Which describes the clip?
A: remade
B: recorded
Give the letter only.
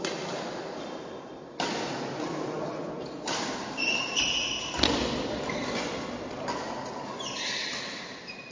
B